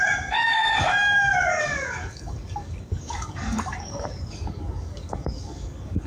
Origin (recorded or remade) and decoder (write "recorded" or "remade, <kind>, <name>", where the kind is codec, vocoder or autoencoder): remade, codec, DAC